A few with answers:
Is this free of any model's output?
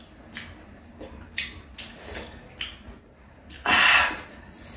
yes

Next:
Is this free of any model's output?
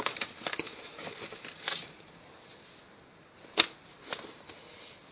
yes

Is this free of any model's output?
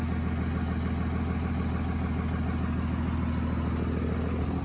yes